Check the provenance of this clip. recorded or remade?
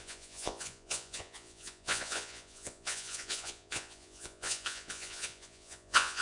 remade